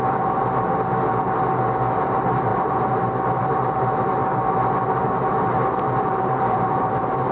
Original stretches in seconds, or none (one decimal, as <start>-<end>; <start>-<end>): 0.9-2.0; 4.2-4.9